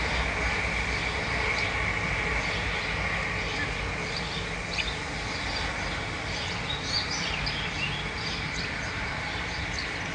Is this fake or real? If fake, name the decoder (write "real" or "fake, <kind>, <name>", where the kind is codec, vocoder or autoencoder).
real